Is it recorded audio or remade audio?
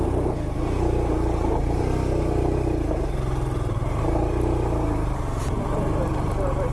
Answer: remade